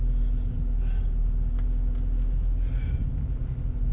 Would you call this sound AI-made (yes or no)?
no